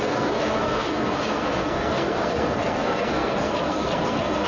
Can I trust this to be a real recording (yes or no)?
no